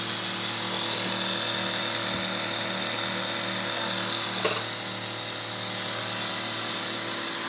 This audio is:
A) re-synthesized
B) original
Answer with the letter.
B